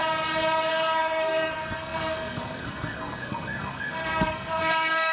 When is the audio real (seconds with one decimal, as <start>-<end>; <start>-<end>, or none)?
0.0-0.7